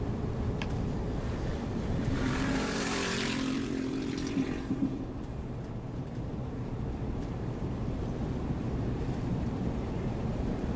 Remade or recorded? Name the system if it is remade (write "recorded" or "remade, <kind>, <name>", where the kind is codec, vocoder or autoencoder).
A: remade, vocoder, BigVGAN v2